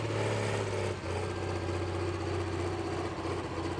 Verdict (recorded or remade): recorded